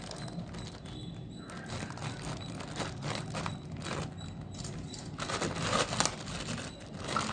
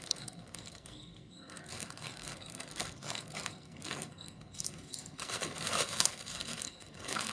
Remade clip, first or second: second